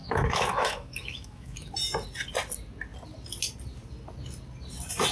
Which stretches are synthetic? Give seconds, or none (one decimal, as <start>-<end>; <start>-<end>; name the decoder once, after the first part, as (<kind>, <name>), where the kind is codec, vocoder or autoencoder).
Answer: 0.0-1.7 (autoencoder, DAC-VAE)